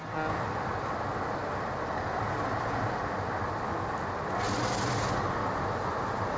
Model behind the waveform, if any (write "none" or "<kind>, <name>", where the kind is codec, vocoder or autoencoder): none